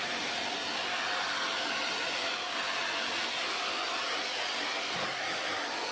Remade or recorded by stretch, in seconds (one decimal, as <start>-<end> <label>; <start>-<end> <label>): 0.0-5.9 recorded